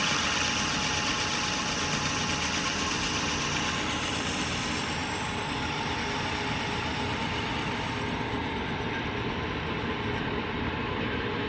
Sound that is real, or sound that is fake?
real